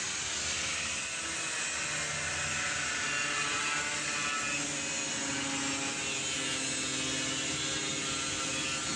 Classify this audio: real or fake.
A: real